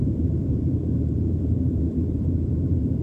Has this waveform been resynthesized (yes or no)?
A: yes